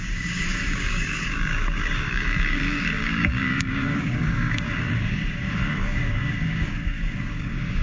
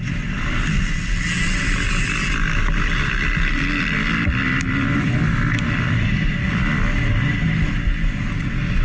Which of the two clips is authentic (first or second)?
second